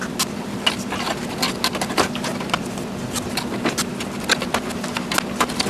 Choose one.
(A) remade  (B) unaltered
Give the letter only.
B